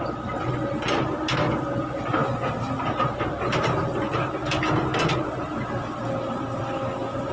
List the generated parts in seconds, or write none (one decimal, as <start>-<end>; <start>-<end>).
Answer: none